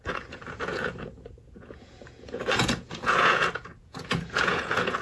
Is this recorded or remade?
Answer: remade